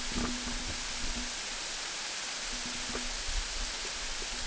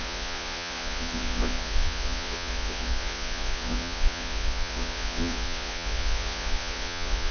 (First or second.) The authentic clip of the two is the first